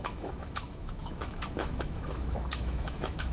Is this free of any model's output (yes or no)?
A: no